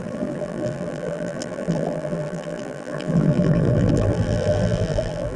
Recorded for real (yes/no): no